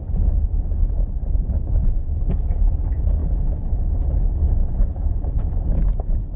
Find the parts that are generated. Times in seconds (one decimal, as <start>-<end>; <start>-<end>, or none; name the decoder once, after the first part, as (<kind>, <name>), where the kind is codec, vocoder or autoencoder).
0.0-3.2 (vocoder, BigVGAN v2); 4.1-6.4